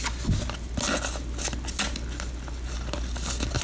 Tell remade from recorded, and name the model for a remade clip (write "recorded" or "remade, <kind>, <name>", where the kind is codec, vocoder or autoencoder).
recorded